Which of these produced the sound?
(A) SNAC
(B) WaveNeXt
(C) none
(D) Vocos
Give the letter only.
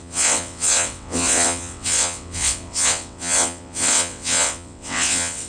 B